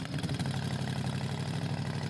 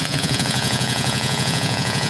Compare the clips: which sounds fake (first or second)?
second